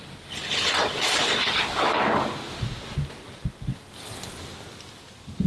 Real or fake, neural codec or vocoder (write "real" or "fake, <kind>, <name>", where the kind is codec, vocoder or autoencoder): real